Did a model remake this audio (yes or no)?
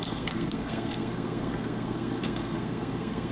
yes